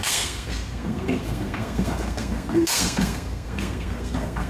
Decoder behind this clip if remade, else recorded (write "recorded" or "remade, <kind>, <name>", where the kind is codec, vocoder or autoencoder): remade, codec, SNAC